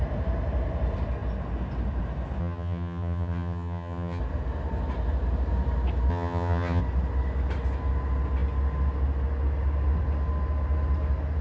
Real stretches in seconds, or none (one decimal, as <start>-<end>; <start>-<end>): 0.0-2.4; 4.2-6.1; 6.8-11.4